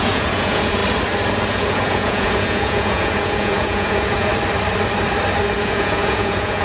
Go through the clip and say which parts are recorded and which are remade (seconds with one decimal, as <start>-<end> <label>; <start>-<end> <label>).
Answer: 0.0-0.8 remade; 0.8-1.5 recorded; 1.5-4.3 remade; 4.3-5.6 recorded; 5.6-6.6 remade